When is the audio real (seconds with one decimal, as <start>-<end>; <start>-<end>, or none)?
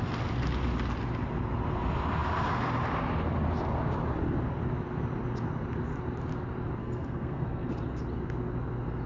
0.0-6.8; 7.7-9.1